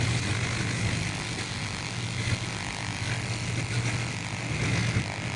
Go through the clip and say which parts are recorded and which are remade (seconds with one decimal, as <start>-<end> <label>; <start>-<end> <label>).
0.0-5.4 recorded